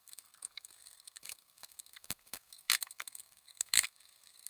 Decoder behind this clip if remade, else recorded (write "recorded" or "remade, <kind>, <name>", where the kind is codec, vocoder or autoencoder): remade, codec, SNAC